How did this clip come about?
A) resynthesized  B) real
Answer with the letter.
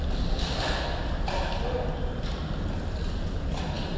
B